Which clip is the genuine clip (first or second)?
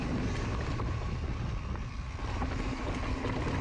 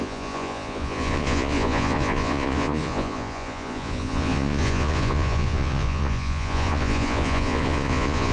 first